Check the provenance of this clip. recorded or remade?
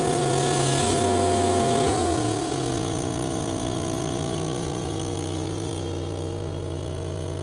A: recorded